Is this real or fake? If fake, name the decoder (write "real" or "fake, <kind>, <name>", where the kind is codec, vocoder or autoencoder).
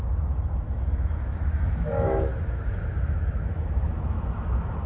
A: fake, autoencoder, DAC-VAE